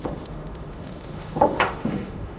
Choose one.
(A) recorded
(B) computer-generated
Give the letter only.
B